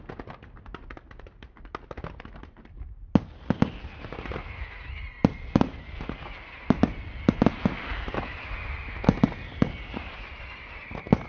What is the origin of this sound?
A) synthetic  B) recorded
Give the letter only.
B